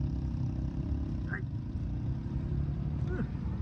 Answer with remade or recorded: remade